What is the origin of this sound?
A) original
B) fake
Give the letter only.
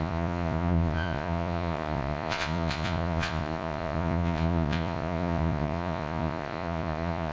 B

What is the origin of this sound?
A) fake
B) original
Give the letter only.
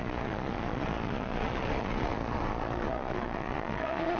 A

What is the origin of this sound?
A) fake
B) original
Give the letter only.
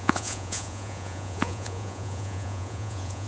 A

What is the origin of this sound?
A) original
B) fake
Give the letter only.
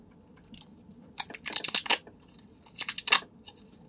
A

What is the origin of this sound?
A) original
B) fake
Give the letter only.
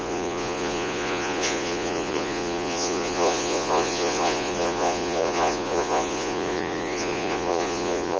B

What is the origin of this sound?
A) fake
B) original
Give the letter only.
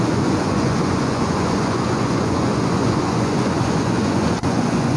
A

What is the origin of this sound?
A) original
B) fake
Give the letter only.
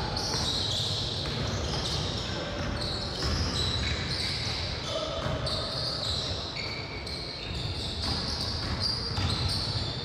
A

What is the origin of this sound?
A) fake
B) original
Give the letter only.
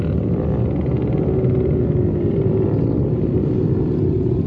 B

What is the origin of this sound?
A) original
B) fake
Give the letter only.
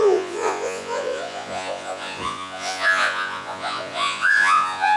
B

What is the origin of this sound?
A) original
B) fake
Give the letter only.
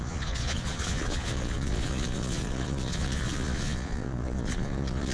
B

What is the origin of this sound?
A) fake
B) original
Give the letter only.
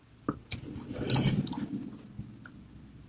B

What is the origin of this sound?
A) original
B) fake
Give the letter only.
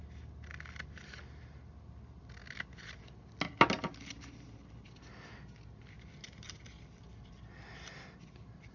A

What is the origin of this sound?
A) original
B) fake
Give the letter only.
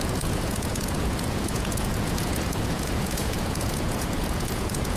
B